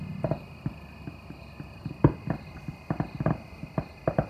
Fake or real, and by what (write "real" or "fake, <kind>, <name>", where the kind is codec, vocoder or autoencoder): real